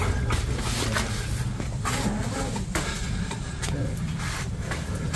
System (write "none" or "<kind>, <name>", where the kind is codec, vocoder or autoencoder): none